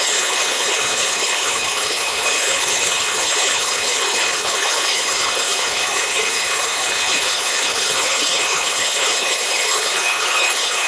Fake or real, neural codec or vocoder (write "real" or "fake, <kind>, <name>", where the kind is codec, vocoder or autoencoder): fake, codec, HILCodec